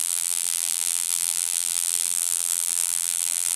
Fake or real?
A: fake